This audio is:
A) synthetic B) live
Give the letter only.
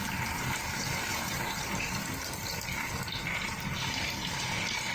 B